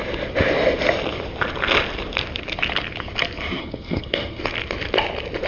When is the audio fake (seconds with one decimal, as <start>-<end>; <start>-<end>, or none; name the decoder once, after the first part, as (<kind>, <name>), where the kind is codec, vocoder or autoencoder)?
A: 3.6-4.4 (codec, SNAC)

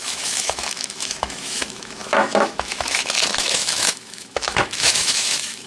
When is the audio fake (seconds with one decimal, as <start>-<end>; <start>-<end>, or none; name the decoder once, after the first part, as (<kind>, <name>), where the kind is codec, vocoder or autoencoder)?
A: 0.0-5.7 (autoencoder, DAC-VAE)

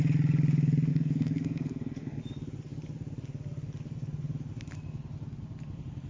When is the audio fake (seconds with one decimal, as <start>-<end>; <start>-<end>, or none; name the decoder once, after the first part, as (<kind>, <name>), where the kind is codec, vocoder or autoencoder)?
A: 0.9-2.2 (codec, SNAC)

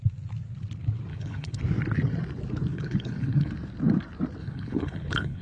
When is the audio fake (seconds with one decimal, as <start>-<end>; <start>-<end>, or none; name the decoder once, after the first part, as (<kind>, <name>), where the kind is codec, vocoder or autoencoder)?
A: 1.1-1.6 (codec, HILCodec); 2.7-3.5; 4.4-5.4

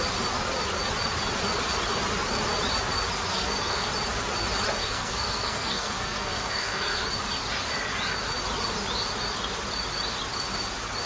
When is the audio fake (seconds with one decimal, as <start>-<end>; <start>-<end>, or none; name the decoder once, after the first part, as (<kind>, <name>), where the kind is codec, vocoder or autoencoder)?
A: 3.3-3.9 (codec, SNAC); 4.8-7.0

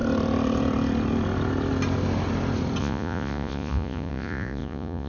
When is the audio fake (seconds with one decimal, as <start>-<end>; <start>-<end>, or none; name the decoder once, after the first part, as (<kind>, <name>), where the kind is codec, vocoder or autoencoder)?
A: 2.8-5.1 (vocoder, Vocos)

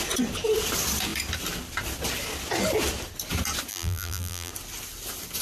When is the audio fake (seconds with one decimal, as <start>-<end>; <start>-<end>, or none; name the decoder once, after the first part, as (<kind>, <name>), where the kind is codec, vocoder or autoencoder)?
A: 3.7-4.5 (vocoder, BigVGAN v2)

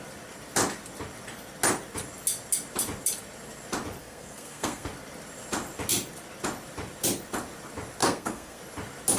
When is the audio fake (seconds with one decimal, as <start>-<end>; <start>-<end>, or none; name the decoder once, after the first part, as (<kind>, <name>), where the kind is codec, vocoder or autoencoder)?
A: 4.0-4.9 (codec, SNAC); 8.0-8.6